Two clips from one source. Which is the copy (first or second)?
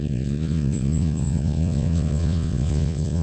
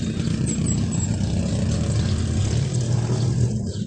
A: first